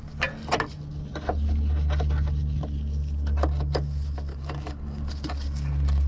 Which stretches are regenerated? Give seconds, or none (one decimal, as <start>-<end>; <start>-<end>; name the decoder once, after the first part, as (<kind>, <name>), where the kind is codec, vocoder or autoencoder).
4.3-5.0 (codec, DAC)